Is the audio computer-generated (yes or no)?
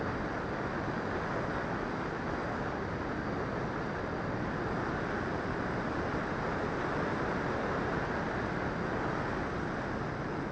no